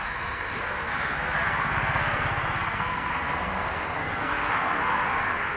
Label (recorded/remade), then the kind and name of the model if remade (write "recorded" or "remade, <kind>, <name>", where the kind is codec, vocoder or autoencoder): remade, codec, SNAC